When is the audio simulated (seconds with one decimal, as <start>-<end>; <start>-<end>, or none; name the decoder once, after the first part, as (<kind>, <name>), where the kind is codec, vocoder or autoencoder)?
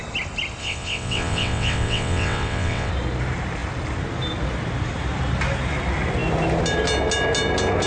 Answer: 0.6-2.9 (vocoder, WaveNeXt)